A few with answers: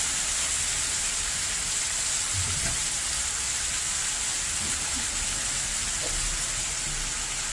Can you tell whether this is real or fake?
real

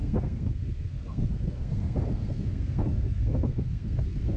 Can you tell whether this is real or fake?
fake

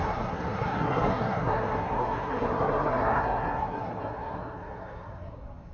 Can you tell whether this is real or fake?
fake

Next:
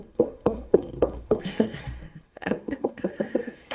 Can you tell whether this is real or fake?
fake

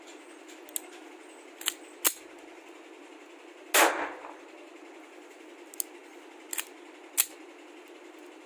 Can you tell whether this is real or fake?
real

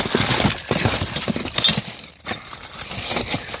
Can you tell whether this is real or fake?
real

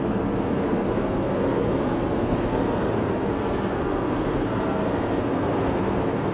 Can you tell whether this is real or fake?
fake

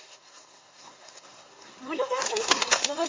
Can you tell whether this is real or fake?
fake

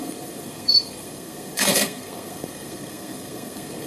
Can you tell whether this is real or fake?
fake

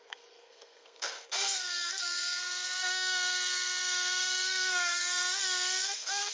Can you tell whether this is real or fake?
fake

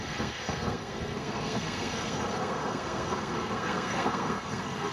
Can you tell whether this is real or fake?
fake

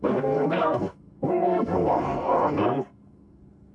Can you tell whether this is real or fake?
fake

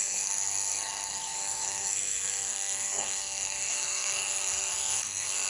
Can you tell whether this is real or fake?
fake